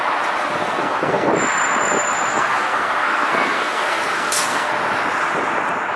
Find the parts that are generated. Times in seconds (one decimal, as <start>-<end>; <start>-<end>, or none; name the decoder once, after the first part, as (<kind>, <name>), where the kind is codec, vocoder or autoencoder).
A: 0.6-1.3 (codec, SNAC); 2.3-4.7